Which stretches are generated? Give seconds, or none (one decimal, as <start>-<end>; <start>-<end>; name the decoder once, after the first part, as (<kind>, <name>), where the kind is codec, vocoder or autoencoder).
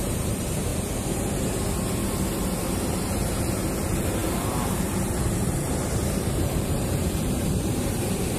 0.0-0.7 (vocoder, BigVGAN v2); 2.6-8.4